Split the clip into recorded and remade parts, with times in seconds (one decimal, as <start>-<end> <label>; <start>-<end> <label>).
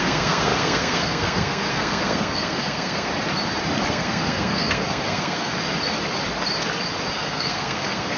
0.0-3.1 remade; 3.1-3.9 recorded; 3.9-5.5 remade; 5.5-7.1 recorded; 7.1-8.2 remade